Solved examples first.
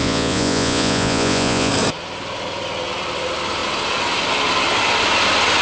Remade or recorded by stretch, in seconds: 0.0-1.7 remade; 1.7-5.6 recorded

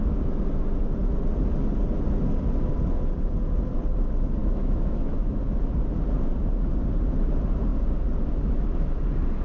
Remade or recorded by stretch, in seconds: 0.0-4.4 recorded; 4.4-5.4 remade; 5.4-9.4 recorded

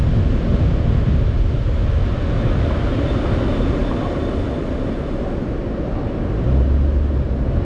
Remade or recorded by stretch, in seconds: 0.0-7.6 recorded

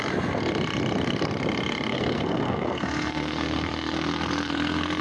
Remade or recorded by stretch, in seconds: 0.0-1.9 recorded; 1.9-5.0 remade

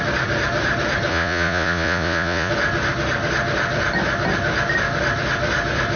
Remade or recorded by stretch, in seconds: 0.0-1.1 recorded; 1.1-2.5 remade; 2.5-6.0 recorded

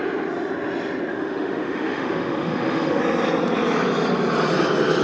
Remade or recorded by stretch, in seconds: 0.0-1.1 recorded; 1.1-3.0 remade; 3.0-5.0 recorded